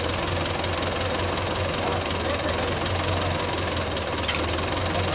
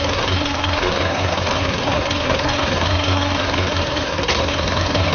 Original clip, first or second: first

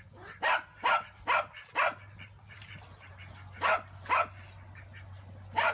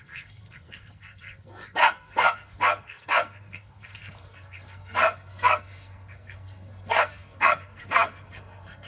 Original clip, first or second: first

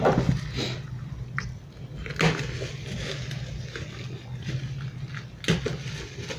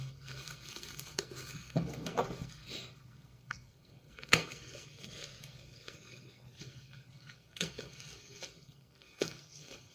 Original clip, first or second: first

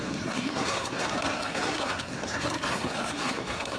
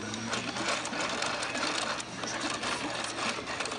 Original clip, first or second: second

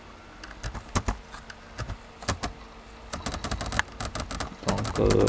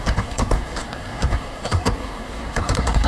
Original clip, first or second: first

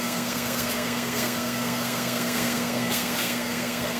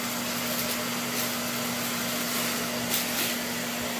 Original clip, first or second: second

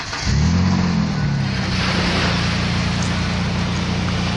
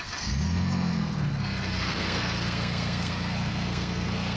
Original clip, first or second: first